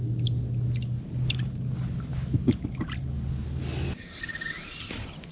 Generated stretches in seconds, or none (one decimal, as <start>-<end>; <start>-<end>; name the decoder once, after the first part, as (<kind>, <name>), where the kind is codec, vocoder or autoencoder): none